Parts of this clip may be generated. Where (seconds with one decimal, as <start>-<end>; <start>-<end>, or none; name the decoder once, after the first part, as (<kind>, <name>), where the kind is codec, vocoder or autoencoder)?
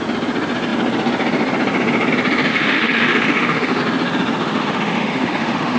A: 2.5-3.8 (autoencoder, DAC-VAE); 4.4-5.8